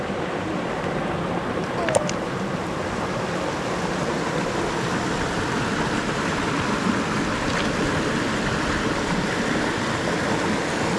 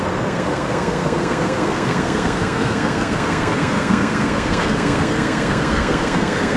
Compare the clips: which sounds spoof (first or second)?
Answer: second